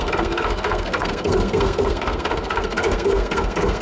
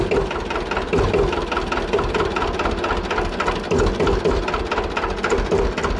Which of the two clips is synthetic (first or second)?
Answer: first